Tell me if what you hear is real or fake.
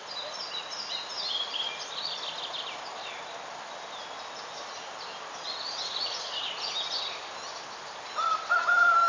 real